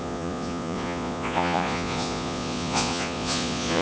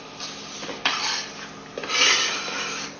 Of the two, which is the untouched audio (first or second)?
second